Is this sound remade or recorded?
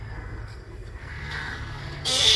remade